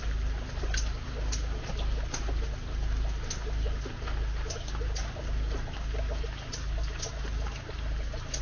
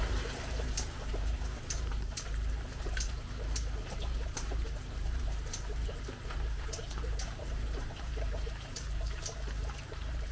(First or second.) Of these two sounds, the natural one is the first